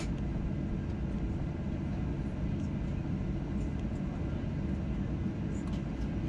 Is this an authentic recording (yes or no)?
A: yes